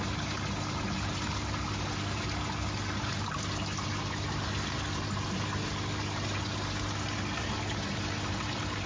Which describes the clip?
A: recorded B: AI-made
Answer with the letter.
A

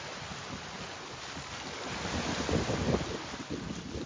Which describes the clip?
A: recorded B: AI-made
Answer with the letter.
A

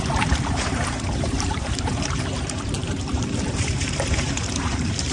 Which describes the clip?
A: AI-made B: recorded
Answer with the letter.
A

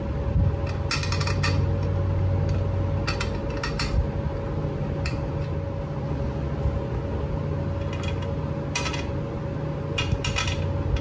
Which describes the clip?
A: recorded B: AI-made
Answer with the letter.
A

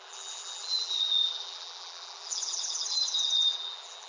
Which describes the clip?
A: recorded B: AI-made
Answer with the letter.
B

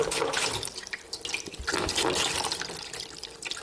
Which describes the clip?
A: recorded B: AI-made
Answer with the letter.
A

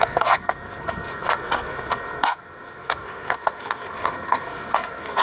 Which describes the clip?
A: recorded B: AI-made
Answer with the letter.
B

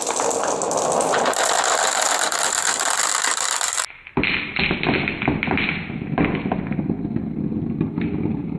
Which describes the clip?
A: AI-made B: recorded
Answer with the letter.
B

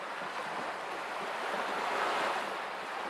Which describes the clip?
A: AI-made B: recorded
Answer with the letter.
B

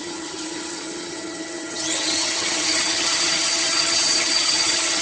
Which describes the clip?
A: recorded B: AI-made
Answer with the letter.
B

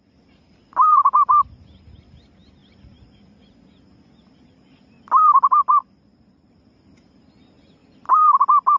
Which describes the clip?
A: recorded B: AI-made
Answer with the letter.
A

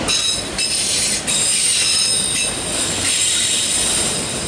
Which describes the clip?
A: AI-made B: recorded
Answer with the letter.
B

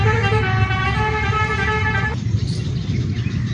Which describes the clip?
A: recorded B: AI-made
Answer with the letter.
A